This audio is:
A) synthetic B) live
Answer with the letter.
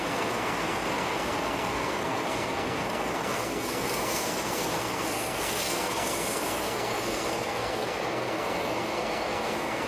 A